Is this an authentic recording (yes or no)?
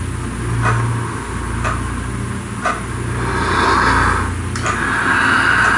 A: yes